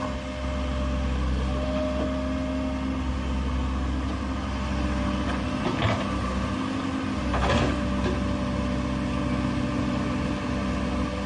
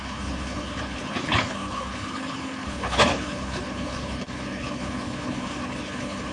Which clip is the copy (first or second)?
second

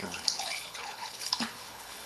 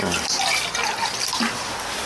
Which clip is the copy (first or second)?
first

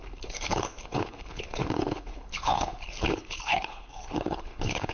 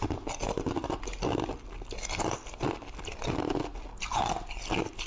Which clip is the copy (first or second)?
first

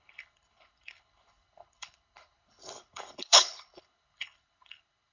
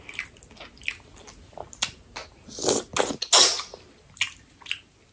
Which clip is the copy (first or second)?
first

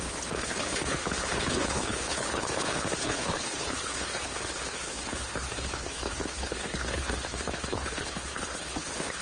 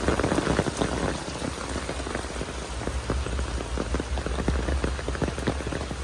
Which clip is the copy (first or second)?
first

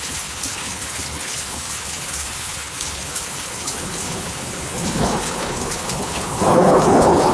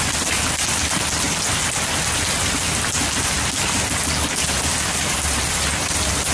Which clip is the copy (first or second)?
first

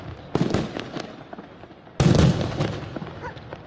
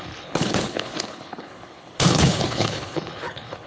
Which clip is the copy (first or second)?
second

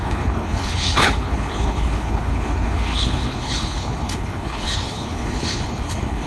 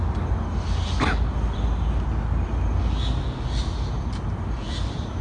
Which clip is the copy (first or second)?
first